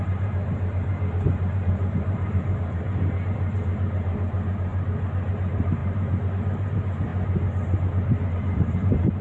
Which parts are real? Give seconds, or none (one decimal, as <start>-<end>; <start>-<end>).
4.7-5.3; 7.1-8.3